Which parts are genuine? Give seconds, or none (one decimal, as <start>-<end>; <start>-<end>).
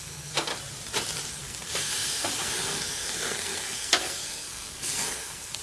0.5-1.3